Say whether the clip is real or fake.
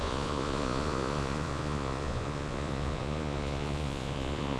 fake